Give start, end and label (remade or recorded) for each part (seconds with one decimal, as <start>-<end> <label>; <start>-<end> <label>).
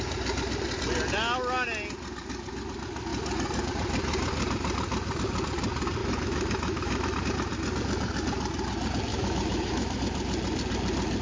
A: 0.0-6.0 recorded; 6.0-7.2 remade; 7.2-9.1 recorded; 9.1-10.0 remade; 10.0-11.2 recorded